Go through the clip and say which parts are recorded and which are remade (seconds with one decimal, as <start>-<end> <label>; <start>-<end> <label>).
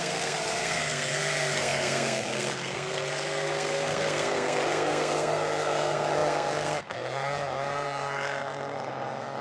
0.0-9.4 remade